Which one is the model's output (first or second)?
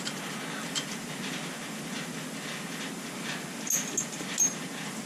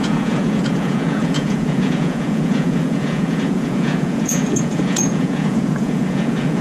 second